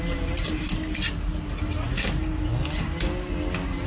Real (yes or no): yes